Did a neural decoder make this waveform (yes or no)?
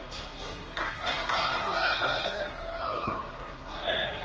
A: yes